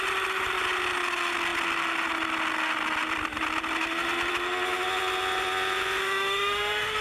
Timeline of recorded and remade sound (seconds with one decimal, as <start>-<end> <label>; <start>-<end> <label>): 0.0-6.0 recorded; 6.0-7.0 remade